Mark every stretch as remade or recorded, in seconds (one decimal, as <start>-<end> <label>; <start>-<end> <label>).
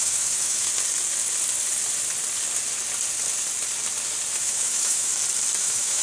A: 0.0-0.7 remade; 0.7-4.3 recorded; 4.3-5.1 remade; 5.1-5.6 recorded; 5.6-6.0 remade